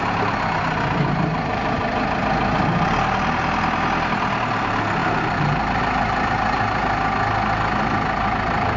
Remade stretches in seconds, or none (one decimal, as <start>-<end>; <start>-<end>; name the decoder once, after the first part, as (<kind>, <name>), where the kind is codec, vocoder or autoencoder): none